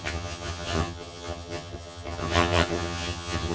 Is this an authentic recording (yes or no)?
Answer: no